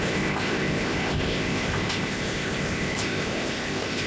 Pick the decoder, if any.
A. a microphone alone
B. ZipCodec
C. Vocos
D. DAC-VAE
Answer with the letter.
B